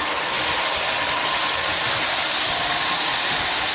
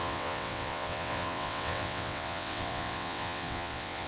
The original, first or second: first